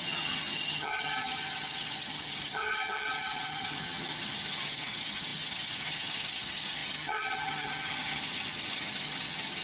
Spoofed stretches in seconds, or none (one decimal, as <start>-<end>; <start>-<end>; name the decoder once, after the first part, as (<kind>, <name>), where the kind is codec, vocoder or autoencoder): 0.0-9.6 (vocoder, HiFi-GAN)